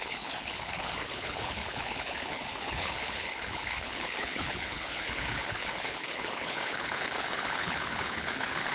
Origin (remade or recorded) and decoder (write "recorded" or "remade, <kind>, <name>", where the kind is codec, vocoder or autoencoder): remade, codec, HILCodec